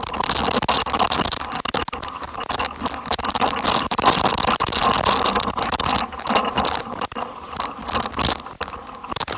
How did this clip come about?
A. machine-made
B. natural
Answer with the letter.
B